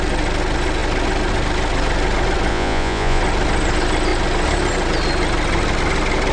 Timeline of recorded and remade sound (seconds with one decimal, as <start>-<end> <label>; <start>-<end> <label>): 0.0-2.5 recorded; 2.5-3.2 remade; 3.2-6.3 recorded